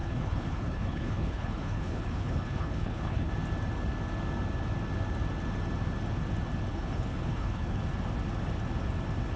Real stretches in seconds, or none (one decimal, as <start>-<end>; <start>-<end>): 3.3-6.7; 7.8-9.4